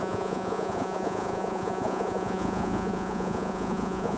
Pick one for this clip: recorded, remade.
remade